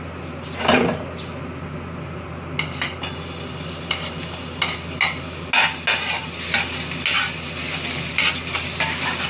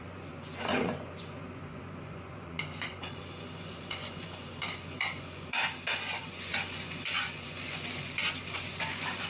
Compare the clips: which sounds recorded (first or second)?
first